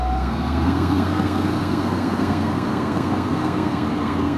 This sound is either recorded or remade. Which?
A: remade